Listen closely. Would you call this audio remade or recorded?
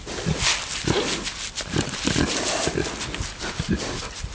recorded